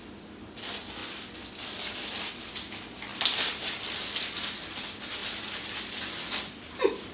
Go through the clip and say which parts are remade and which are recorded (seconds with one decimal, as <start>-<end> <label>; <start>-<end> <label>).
0.0-7.1 recorded